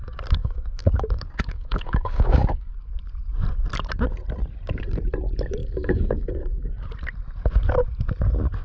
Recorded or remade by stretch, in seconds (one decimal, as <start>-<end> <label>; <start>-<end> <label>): 0.0-0.4 recorded; 0.4-2.7 remade; 2.7-5.6 recorded; 5.6-6.7 remade; 6.7-8.6 recorded